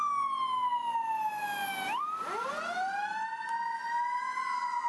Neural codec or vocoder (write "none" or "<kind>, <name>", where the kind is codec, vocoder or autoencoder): none